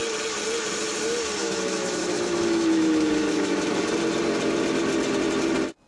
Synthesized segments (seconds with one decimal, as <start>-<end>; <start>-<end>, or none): 1.4-3.8